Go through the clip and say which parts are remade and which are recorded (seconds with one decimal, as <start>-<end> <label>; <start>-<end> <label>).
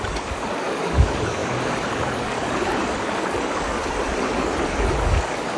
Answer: 0.0-3.8 remade; 3.8-4.3 recorded; 4.3-5.6 remade